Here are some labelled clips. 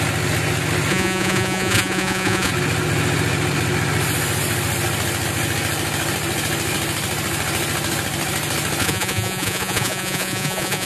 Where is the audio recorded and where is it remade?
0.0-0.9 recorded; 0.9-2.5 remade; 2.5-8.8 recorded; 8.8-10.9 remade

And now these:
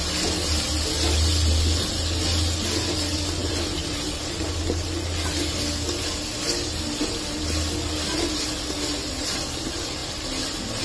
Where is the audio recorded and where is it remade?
0.0-10.8 recorded